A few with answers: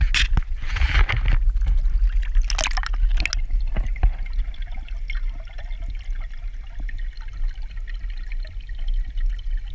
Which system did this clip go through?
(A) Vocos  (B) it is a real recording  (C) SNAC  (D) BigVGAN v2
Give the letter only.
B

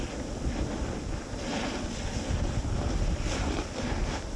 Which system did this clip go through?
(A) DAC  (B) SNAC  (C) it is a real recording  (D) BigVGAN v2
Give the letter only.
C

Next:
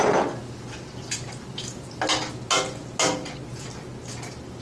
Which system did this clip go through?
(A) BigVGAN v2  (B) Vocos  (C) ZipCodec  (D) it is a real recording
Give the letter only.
D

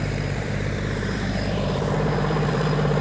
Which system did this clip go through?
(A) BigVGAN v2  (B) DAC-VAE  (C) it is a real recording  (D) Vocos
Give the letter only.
A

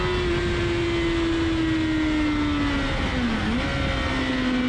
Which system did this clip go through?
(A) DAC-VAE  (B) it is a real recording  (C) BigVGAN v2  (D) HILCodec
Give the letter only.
B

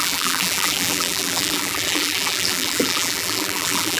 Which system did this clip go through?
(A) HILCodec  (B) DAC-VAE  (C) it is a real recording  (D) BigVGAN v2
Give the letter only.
D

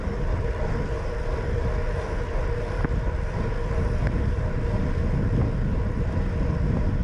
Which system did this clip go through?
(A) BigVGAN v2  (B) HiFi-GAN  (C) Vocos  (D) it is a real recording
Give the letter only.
D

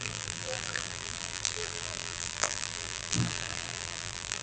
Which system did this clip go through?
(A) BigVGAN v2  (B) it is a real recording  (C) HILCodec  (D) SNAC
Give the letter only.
A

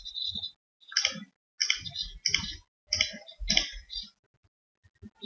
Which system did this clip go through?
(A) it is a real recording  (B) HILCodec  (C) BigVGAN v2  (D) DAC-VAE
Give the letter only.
A